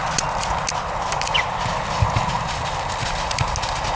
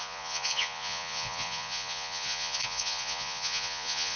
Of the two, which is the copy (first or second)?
second